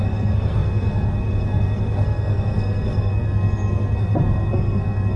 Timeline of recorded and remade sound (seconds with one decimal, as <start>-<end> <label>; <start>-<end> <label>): 0.0-5.2 remade